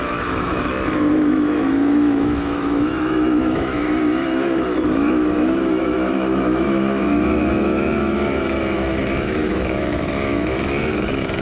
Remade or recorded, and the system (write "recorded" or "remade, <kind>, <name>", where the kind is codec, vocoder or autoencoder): remade, autoencoder, DAC-VAE